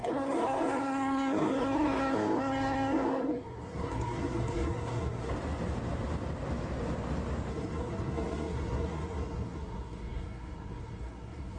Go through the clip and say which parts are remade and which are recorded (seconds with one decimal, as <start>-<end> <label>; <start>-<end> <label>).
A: 0.0-5.3 remade; 5.3-7.5 recorded; 7.5-11.6 remade